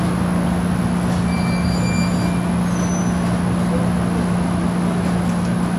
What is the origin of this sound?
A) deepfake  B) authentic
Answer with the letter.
B